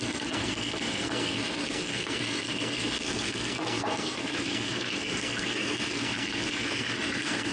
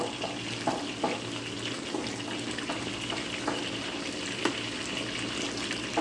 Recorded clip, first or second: second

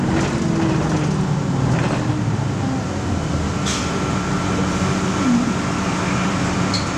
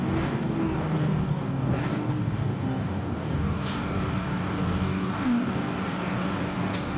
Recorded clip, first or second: first